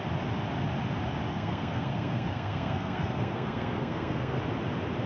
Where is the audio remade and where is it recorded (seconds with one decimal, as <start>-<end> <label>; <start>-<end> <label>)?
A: 0.0-1.3 recorded; 1.3-4.4 remade; 4.4-5.1 recorded